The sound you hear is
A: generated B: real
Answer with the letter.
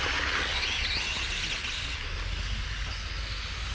B